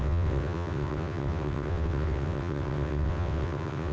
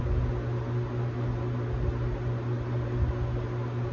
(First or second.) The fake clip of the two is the first